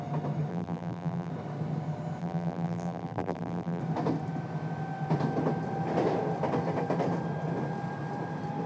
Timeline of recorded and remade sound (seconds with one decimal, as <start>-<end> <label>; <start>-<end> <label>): 0.0-0.5 recorded; 0.5-1.3 remade; 1.3-2.2 recorded; 2.2-3.8 remade; 3.8-8.7 recorded